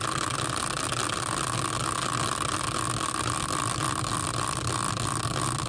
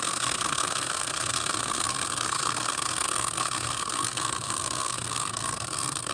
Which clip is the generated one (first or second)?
second